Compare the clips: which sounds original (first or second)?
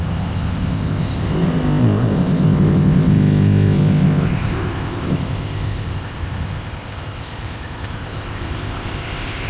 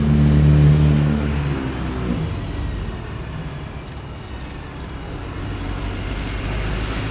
second